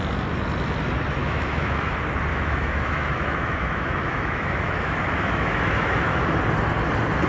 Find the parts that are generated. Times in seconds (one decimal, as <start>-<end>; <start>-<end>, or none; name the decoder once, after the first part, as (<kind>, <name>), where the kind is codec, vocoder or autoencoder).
1.2-1.9 (autoencoder, DAC-VAE); 2.3-6.3